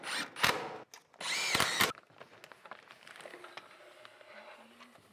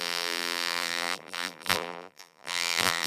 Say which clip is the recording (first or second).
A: first